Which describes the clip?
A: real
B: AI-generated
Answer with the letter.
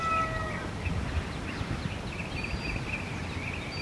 A